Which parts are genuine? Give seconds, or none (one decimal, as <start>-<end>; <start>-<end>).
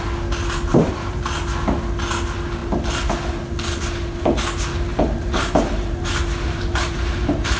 0.0-0.7; 1.3-4.9